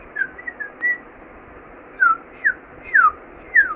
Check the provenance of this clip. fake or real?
real